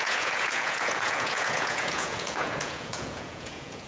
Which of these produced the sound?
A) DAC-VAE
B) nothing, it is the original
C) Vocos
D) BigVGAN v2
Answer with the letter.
C